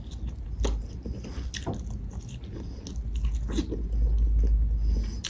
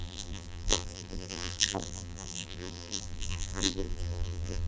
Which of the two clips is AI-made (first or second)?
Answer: second